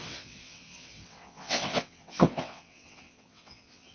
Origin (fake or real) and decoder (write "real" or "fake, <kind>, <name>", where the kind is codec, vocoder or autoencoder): fake, vocoder, WaveNeXt